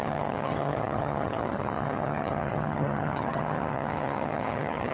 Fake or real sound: fake